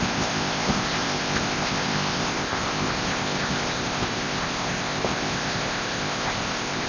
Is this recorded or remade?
remade